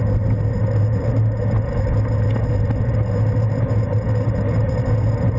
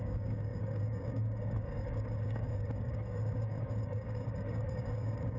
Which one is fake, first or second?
second